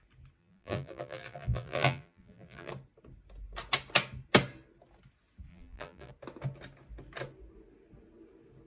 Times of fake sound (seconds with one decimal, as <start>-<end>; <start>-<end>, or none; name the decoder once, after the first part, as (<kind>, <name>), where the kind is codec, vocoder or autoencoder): 0.4-2.7 (vocoder, BigVGAN v2); 5.5-6.1